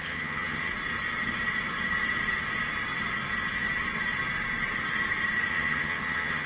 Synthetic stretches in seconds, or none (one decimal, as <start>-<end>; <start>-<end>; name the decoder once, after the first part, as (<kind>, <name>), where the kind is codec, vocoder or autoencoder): 0.0-0.7 (vocoder, HiFi-GAN); 5.5-6.5